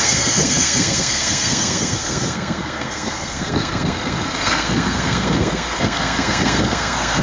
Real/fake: fake